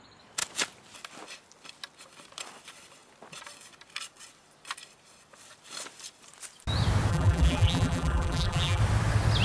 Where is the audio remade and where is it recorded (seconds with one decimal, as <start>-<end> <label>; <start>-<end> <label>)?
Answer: 0.0-7.1 recorded; 7.1-8.8 remade; 8.8-9.4 recorded

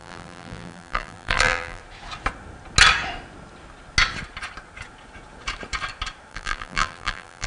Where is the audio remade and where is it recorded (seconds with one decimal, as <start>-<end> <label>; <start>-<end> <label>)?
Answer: 0.0-1.8 remade; 1.8-6.3 recorded; 6.3-7.5 remade

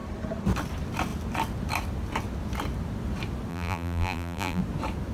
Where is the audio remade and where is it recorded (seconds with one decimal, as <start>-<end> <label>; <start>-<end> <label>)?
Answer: 0.0-3.5 recorded; 3.5-4.6 remade; 4.6-5.1 recorded

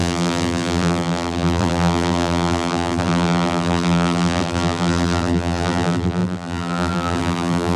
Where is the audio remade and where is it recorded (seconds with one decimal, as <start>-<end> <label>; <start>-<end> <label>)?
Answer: 0.0-7.8 remade

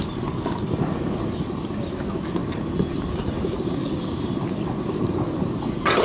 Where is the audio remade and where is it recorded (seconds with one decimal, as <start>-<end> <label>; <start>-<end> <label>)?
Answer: 0.0-6.0 recorded

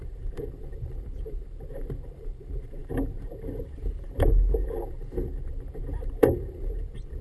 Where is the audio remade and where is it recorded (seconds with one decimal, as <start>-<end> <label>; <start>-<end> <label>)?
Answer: 0.0-7.2 remade

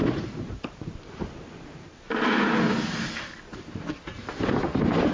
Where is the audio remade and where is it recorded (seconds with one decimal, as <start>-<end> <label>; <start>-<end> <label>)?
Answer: 0.0-3.1 remade; 3.1-3.5 recorded; 3.5-4.1 remade; 4.1-5.1 recorded

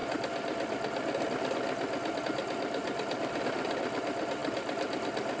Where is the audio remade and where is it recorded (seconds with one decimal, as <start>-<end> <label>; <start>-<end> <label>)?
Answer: 0.0-2.2 recorded; 2.2-5.4 remade